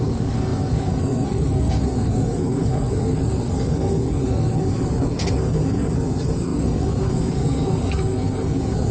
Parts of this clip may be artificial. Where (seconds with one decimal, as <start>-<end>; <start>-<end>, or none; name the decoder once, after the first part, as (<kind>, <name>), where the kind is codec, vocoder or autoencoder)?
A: 0.0-8.9 (codec, SNAC)